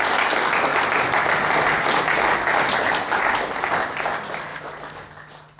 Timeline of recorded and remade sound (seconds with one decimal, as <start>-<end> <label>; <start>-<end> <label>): 0.0-5.6 recorded